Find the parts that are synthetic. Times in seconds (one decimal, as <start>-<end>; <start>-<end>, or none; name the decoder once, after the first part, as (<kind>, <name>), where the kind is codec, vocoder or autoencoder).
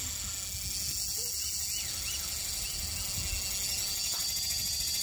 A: none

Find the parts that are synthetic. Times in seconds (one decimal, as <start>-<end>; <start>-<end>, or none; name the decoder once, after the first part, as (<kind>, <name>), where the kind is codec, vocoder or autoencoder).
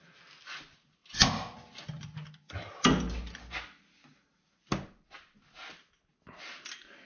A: none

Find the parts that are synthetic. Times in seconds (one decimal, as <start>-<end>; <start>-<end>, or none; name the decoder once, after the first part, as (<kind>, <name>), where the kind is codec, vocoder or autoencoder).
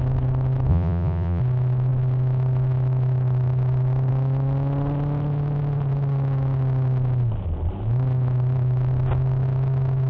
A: 0.7-1.4 (vocoder, Vocos)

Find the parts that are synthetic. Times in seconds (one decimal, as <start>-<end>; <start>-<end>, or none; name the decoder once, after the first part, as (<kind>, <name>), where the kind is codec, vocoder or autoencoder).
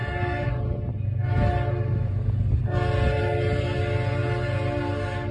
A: none